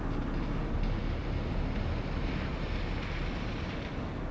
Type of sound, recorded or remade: recorded